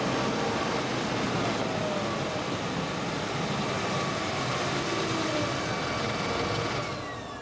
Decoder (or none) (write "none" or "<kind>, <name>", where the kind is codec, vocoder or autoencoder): none